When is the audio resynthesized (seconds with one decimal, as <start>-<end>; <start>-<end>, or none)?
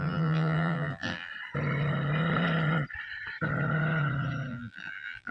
0.0-1.3; 4.5-5.3